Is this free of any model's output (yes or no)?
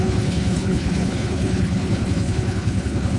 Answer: no